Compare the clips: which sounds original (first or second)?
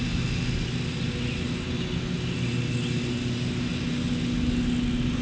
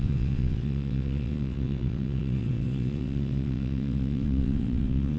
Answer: first